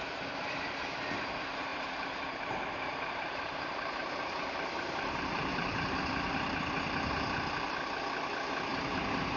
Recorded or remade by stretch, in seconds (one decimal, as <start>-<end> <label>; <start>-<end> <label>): 0.0-1.7 recorded; 1.7-6.0 remade; 6.0-8.7 recorded; 8.7-9.4 remade